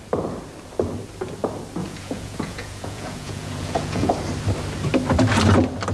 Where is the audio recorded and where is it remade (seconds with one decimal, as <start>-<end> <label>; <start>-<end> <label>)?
0.0-1.8 recorded; 1.8-4.1 remade; 4.1-5.9 recorded